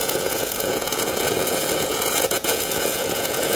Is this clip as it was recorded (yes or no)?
no